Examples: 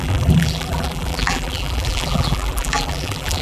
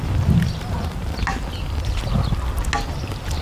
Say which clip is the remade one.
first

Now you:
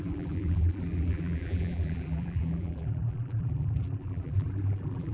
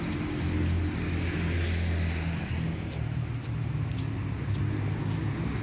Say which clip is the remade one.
first